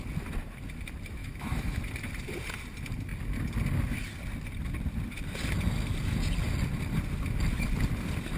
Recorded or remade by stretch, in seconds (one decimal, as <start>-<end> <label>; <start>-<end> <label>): 0.0-1.2 recorded; 1.2-1.8 remade; 1.8-8.4 recorded